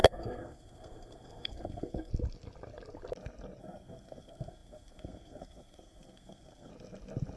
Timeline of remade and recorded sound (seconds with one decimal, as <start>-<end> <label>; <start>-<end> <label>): 0.0-2.1 remade; 2.1-3.6 recorded; 3.6-6.7 remade; 6.7-7.4 recorded